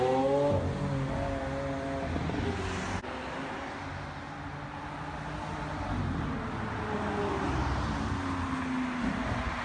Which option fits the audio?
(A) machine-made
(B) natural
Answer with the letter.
B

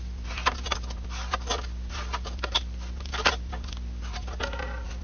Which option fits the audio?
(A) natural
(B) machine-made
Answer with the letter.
A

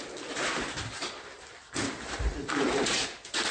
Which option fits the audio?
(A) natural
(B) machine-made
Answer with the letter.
A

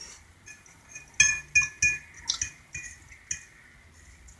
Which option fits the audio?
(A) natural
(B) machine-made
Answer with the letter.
A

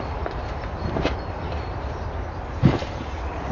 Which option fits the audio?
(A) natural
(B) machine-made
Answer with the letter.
B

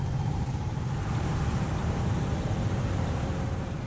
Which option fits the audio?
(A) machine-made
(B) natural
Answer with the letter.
A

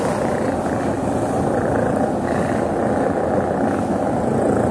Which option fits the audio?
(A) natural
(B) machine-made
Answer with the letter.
A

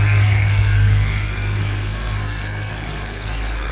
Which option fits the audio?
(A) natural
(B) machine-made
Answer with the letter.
B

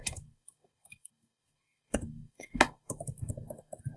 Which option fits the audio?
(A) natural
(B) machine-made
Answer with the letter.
B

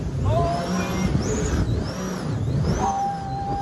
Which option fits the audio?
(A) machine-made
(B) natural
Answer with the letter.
B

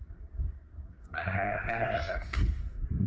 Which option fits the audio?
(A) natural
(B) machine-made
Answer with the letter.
B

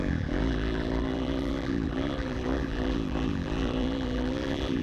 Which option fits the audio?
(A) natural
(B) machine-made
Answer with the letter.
B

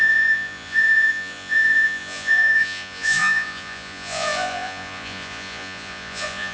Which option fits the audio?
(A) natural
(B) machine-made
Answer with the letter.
B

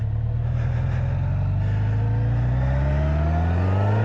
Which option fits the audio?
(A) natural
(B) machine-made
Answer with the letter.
A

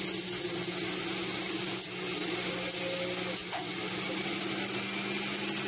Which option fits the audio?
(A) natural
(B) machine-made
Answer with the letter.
A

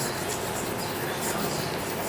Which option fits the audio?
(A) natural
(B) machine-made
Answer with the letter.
A